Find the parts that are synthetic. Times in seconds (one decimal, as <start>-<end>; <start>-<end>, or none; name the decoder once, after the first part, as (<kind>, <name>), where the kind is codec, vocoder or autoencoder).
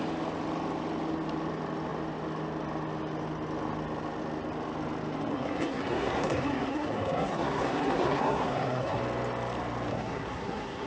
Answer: 5.3-9.0 (codec, SNAC); 9.9-10.9